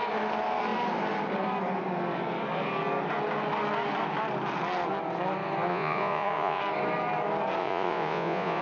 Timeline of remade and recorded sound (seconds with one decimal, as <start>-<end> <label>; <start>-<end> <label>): 0.0-5.7 recorded; 5.7-6.6 remade; 6.6-7.6 recorded; 7.6-8.6 remade